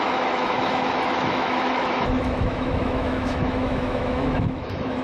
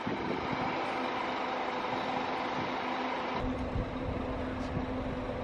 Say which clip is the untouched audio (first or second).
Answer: second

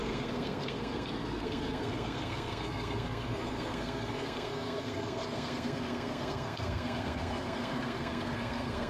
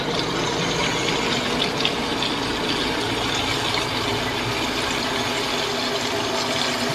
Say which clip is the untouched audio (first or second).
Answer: second